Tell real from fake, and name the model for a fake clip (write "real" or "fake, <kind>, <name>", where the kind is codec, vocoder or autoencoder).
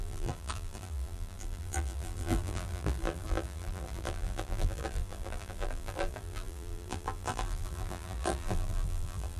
fake, vocoder, BigVGAN v2